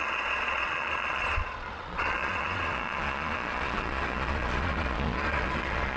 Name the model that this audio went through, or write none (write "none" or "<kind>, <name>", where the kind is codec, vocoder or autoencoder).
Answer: vocoder, Vocos